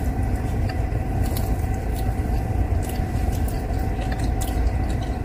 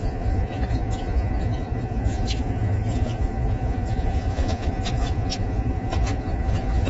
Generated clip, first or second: second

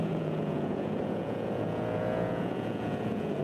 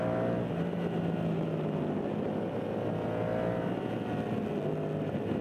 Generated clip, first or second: first